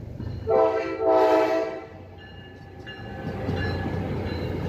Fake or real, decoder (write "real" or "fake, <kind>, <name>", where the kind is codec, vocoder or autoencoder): real